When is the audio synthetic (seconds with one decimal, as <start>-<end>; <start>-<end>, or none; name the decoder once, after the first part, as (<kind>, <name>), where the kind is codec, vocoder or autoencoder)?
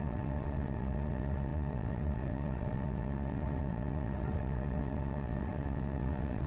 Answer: 0.0-6.5 (vocoder, WaveNeXt)